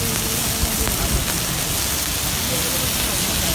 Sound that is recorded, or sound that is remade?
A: recorded